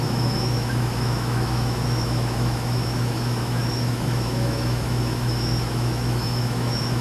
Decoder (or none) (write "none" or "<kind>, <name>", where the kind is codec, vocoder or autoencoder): autoencoder, DAC-VAE